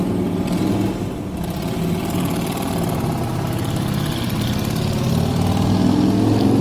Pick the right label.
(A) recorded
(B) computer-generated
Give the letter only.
A